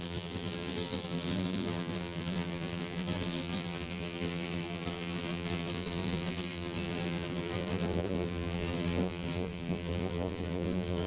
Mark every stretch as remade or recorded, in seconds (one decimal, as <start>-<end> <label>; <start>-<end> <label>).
0.0-11.1 remade